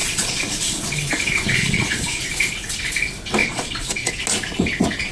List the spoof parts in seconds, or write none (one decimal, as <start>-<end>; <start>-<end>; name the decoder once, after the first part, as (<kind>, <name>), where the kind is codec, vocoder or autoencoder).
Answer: 0.0-0.9 (vocoder, Vocos); 1.6-2.2; 3.4-4.1